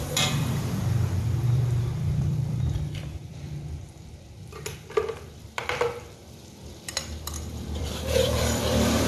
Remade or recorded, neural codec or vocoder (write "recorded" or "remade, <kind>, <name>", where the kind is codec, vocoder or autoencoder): remade, vocoder, BigVGAN v2